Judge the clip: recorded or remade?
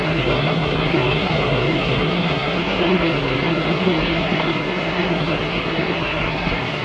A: remade